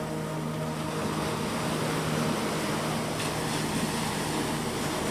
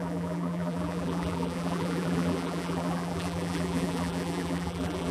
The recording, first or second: first